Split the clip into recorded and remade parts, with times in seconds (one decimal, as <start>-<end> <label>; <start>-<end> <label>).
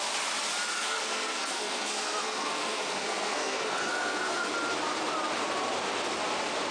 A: 0.0-0.7 recorded; 0.7-4.5 remade; 4.5-6.7 recorded